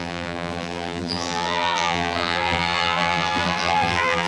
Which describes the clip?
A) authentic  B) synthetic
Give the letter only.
B